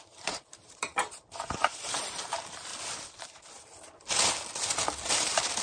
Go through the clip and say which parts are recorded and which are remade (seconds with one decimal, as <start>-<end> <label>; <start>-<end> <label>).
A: 0.0-2.7 remade; 2.7-5.1 recorded; 5.1-5.6 remade